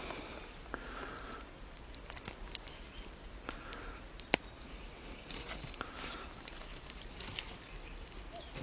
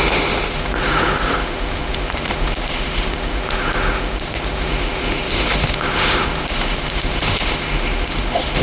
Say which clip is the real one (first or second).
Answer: first